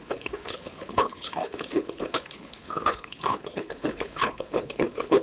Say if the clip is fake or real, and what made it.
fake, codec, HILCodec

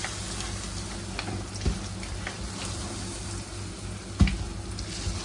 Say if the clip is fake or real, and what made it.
real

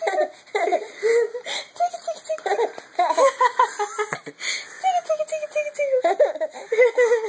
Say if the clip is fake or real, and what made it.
real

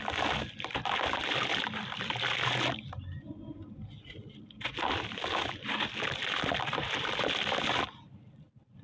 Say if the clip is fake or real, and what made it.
real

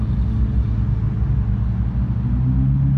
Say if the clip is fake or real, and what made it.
real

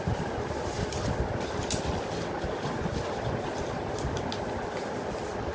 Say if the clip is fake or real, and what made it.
real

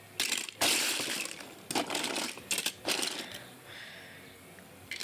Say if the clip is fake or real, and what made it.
real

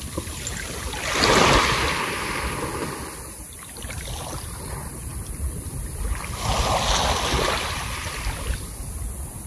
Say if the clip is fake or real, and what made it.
real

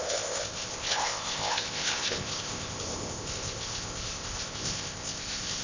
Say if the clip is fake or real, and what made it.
fake, codec, ZipCodec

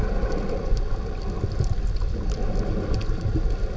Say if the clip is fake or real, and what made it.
real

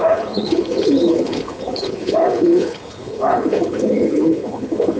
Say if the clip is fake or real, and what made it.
fake, codec, HILCodec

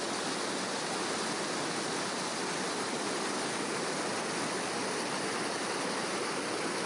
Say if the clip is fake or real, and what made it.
real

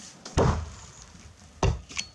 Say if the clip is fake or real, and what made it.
real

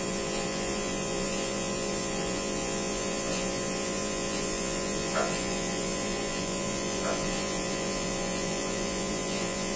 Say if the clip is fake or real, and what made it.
fake, vocoder, Vocos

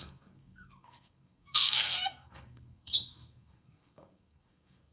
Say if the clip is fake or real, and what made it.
fake, codec, SNAC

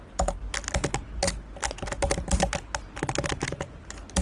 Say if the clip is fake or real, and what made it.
real